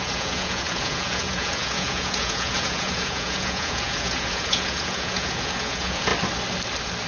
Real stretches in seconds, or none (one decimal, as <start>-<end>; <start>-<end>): 6.1-7.1